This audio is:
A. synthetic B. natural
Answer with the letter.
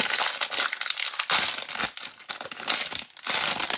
B